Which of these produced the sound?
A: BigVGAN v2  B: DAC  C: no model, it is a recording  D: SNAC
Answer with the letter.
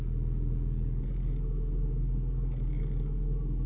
B